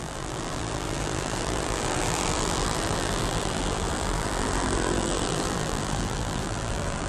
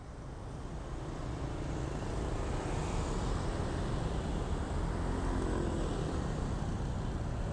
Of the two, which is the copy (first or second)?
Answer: first